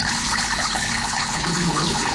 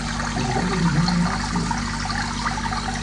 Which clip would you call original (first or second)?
second